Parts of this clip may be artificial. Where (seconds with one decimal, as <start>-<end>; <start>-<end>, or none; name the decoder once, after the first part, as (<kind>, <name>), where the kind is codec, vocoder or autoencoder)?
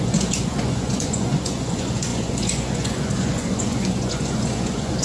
0.0-5.0 (vocoder, Vocos)